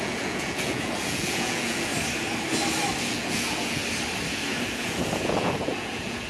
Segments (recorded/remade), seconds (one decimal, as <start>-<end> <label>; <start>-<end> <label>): 0.0-1.9 remade; 1.9-3.0 recorded; 3.0-3.8 remade; 3.8-4.3 recorded; 4.3-6.3 remade